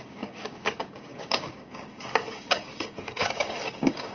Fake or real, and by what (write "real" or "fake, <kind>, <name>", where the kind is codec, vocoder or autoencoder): fake, codec, DAC